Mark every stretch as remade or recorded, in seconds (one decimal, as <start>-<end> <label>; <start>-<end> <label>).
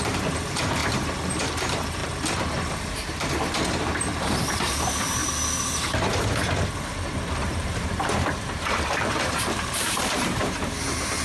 0.0-2.0 remade; 2.0-2.9 recorded; 2.9-5.2 remade; 5.2-7.4 recorded; 7.4-11.2 remade